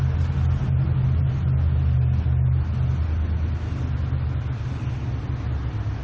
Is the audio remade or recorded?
recorded